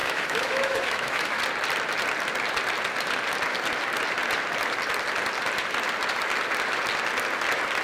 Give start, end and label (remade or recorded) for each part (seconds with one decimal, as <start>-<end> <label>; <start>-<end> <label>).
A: 0.0-1.4 remade; 1.4-7.8 recorded